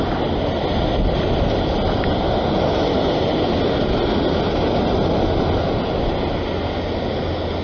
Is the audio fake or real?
real